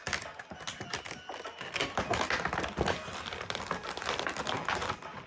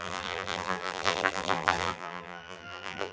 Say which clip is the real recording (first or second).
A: first